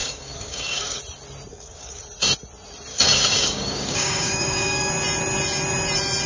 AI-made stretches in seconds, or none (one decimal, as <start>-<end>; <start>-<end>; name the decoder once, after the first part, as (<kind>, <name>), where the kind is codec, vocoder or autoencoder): 0.0-1.0 (codec, DAC); 1.5-2.0; 2.9-4.9